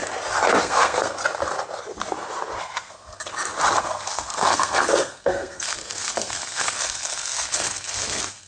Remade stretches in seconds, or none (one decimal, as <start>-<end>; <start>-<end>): 0.6-1.2; 2.6-3.3; 3.8-8.5

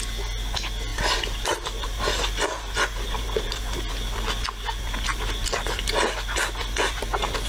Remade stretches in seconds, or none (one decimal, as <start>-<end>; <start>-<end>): 0.9-3.9; 5.1-6.0

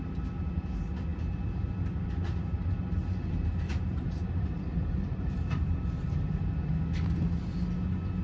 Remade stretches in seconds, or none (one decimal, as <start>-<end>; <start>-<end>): 3.0-6.7

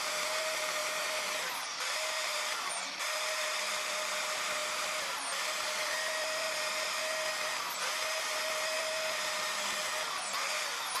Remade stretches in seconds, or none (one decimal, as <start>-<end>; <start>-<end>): 0.8-2.4; 4.6-7.0

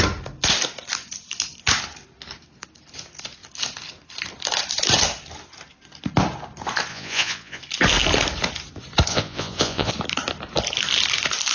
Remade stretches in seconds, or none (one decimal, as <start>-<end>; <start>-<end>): 6.9-7.6; 9.1-9.9